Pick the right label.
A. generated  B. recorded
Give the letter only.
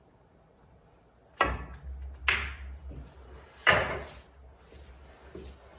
B